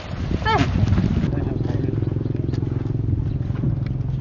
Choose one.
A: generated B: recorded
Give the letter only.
B